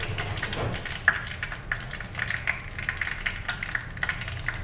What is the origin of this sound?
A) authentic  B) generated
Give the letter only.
A